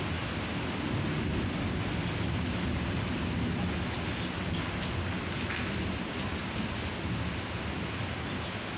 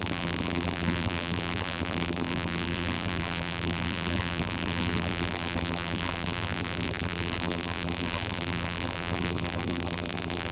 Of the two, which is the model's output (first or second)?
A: second